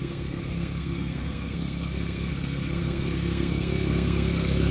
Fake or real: fake